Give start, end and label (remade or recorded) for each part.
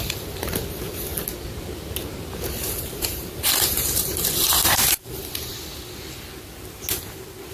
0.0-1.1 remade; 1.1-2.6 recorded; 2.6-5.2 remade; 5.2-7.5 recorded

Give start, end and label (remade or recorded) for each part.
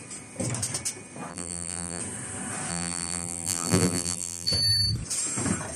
0.0-1.3 recorded; 1.3-2.0 remade; 2.0-2.7 recorded; 2.7-4.5 remade; 4.5-5.8 recorded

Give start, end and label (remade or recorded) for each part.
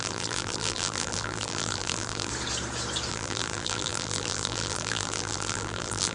0.0-2.3 remade; 2.3-3.1 recorded; 3.1-6.1 remade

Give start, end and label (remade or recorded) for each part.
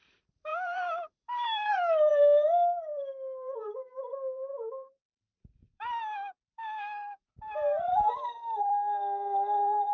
0.0-9.9 remade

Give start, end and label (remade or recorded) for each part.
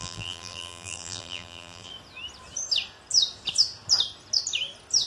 0.0-1.9 remade; 1.9-5.1 recorded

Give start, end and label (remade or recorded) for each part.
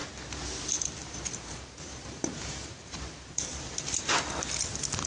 0.0-1.0 recorded; 1.0-4.1 remade; 4.1-5.1 recorded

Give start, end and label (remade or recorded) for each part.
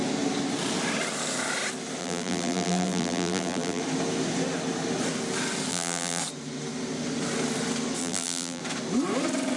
0.0-2.0 recorded; 2.0-3.8 remade; 3.8-5.7 recorded; 5.7-6.2 remade; 6.2-8.0 recorded; 8.0-8.6 remade; 8.6-9.6 recorded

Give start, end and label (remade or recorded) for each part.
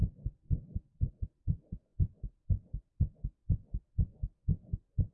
0.0-5.1 recorded